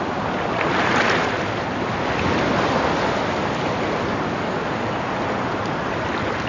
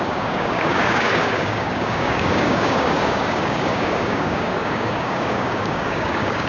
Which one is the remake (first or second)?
second